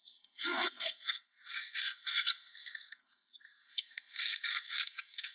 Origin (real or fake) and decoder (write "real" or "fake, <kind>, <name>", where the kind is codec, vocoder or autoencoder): fake, codec, SNAC